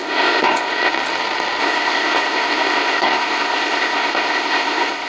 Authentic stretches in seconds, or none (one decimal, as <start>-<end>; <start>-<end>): 0.9-1.6